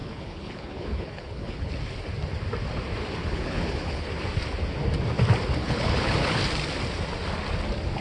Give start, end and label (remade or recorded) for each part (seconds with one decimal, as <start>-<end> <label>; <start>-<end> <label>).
0.0-1.7 remade; 1.7-3.2 recorded; 3.2-4.1 remade; 4.1-5.6 recorded; 5.6-6.4 remade; 6.4-8.0 recorded